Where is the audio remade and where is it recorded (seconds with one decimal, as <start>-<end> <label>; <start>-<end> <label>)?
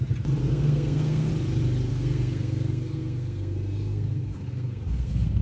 0.0-0.4 recorded; 0.4-1.3 remade; 1.3-1.9 recorded; 1.9-5.4 remade